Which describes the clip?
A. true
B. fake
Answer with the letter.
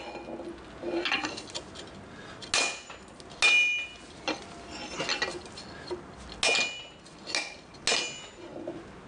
A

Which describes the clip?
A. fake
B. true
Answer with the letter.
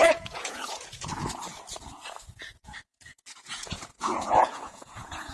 A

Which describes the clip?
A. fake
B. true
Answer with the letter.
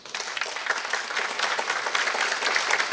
B